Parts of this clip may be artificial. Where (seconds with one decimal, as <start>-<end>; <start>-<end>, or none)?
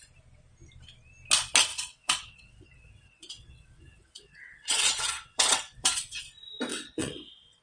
1.7-6.2; 6.7-7.6